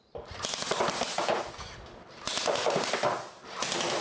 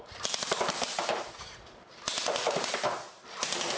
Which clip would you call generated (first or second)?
second